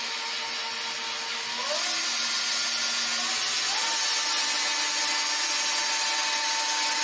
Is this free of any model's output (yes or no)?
yes